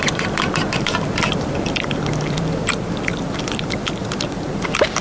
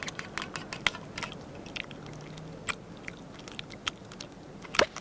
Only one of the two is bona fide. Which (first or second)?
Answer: second